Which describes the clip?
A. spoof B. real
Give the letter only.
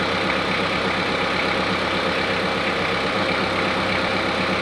B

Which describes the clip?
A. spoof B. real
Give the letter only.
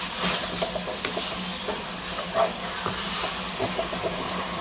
B